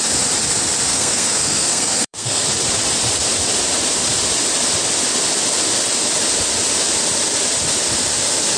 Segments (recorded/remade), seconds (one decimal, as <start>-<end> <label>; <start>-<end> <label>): 0.0-0.9 recorded; 0.9-2.4 remade; 2.4-8.6 recorded